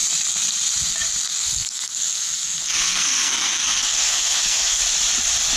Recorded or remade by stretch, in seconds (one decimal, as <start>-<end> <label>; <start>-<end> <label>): 0.0-1.4 recorded; 1.4-4.8 remade; 4.8-5.6 recorded